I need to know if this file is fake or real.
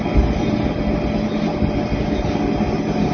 real